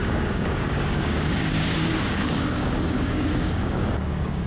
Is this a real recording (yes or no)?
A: no